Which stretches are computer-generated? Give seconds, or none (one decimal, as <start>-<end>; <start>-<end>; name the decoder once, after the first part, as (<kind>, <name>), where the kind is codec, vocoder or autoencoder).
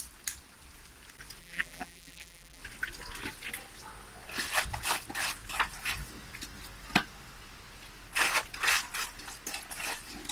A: 1.4-2.6 (vocoder, BigVGAN v2)